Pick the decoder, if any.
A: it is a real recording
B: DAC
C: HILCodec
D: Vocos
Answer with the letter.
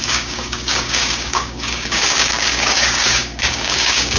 B